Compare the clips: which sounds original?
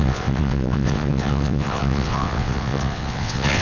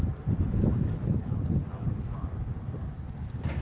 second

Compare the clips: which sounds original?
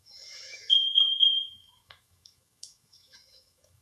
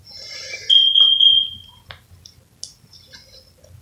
second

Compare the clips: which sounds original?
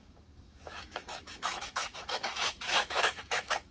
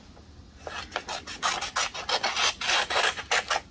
second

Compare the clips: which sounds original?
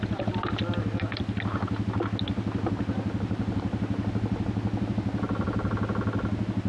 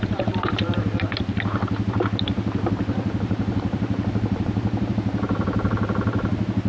first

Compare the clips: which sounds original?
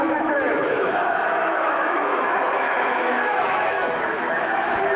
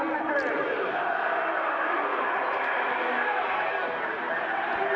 second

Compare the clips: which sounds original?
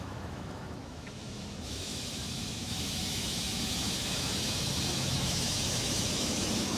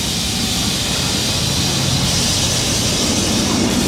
second